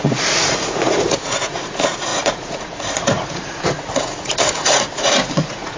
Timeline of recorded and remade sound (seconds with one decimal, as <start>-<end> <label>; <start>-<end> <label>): 0.0-5.8 remade